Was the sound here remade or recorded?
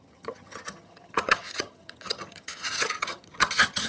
remade